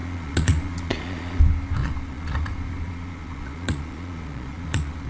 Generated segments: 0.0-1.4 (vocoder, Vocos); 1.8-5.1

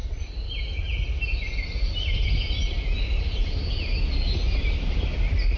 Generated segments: none

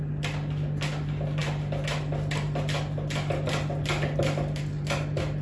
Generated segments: none

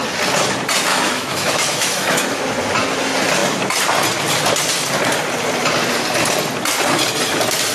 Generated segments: 0.9-2.4 (autoencoder, DAC-VAE)

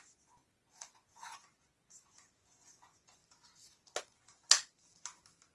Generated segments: 0.0-3.2 (vocoder, Vocos); 4.0-4.4

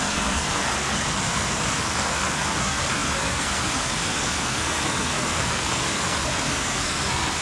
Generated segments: 0.0-7.4 (codec, SNAC)